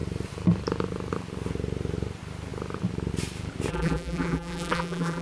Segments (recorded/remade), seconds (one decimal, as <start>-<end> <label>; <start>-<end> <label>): 0.0-3.7 recorded; 3.7-5.2 remade